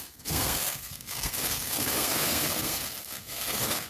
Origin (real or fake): fake